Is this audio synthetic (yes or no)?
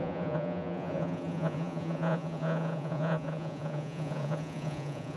yes